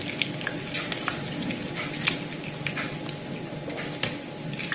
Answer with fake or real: real